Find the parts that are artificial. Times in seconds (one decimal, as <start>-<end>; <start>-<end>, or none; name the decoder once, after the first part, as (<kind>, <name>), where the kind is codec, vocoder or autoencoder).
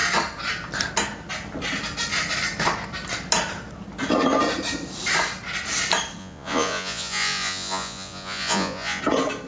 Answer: 6.2-9.0 (vocoder, Vocos)